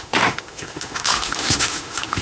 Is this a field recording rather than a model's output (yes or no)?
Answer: no